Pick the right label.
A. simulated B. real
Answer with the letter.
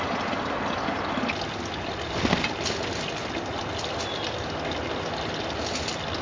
B